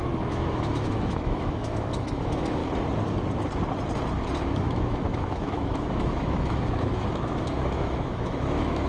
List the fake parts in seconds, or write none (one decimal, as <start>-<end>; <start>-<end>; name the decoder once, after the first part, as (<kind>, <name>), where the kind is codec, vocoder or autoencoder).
0.0-2.6 (autoencoder, DAC-VAE); 4.4-8.9